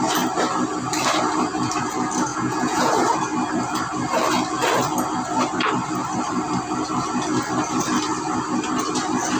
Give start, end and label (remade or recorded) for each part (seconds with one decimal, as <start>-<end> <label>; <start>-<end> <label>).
0.0-2.3 recorded; 2.3-2.9 remade; 2.9-9.4 recorded